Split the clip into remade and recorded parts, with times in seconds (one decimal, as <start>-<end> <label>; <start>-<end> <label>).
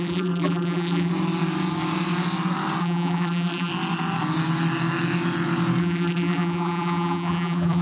0.0-1.1 remade; 1.1-2.8 recorded; 2.8-3.7 remade; 3.7-5.8 recorded; 5.8-7.8 remade